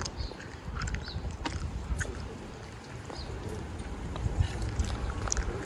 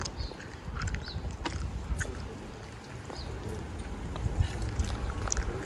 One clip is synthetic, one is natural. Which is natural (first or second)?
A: second